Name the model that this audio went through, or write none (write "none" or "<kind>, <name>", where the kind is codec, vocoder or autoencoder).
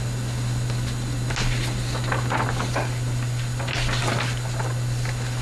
none